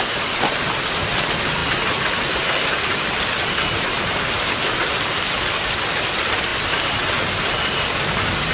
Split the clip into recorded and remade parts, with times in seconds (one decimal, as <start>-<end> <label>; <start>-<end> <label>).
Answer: 0.0-8.5 recorded